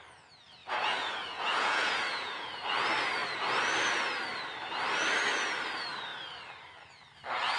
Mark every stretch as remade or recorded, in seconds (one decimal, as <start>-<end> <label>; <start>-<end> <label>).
0.0-0.6 recorded; 0.6-2.6 remade; 2.6-7.6 recorded